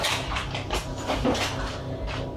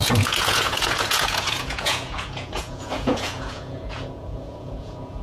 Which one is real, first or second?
first